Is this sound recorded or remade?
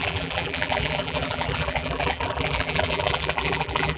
remade